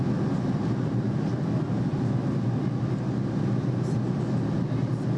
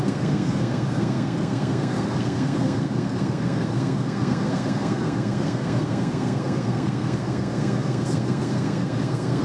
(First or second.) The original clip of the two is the first